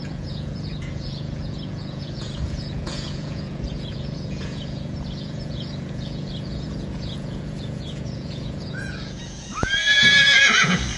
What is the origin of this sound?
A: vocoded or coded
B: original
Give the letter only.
A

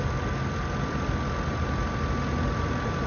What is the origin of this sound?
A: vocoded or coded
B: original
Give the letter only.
B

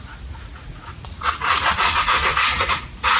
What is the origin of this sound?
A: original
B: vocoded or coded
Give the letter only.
B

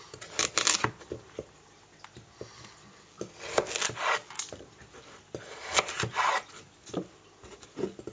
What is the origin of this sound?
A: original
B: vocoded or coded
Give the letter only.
A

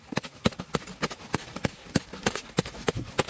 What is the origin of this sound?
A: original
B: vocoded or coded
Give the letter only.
A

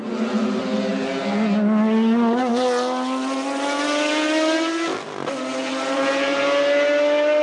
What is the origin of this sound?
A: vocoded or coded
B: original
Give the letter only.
B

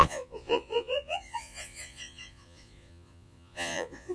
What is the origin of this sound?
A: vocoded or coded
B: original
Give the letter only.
A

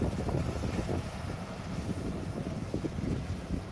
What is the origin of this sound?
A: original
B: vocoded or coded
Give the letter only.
A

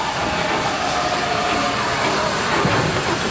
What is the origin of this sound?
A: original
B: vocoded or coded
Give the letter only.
A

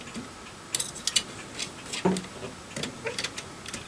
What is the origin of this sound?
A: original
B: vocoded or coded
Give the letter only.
A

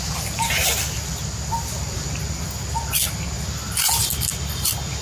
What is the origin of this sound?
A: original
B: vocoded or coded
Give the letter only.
A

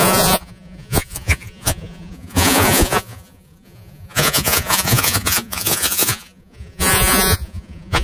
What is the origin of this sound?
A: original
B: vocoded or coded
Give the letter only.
B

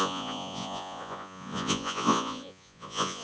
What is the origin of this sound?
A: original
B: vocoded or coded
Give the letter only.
B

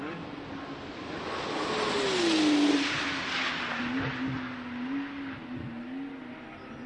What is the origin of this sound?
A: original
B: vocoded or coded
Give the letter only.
A